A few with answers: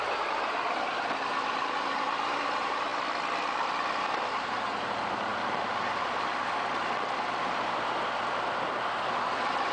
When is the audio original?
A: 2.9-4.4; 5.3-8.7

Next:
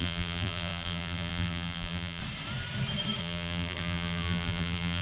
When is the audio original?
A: 2.2-3.2

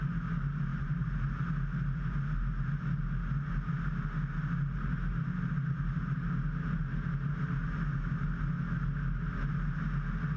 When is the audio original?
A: 0.0-0.7; 1.3-5.1; 6.2-10.4

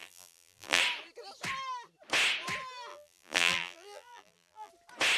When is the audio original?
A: 0.8-2.9; 4.7-5.2